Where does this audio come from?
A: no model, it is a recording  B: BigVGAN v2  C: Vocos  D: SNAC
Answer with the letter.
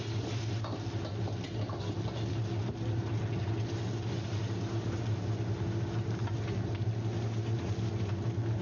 A